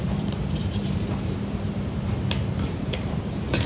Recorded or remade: remade